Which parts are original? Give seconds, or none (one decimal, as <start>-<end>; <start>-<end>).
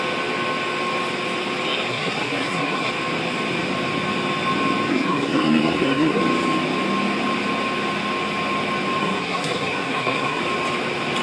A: 0.0-1.9; 2.9-4.9; 6.2-9.0; 10.4-11.2